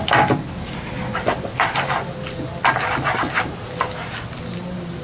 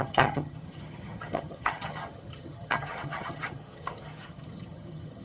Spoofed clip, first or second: second